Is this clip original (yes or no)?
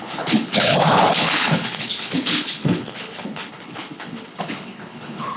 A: no